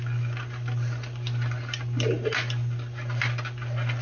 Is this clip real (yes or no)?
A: yes